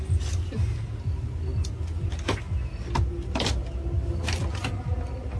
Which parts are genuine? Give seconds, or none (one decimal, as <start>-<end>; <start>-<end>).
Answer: 0.0-5.4